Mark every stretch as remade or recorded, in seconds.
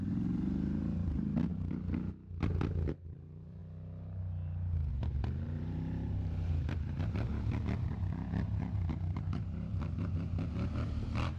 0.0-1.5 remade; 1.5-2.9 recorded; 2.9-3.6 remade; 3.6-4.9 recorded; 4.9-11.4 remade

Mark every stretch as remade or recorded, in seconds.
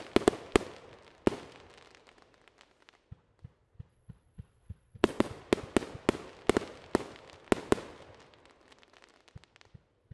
0.0-3.9 recorded; 3.9-5.4 remade; 5.4-10.1 recorded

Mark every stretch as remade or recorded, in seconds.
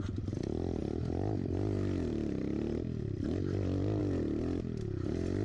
0.0-0.8 recorded; 0.8-4.0 remade; 4.0-5.4 recorded